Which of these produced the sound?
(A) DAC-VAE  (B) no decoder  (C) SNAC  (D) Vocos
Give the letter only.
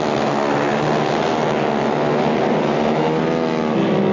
B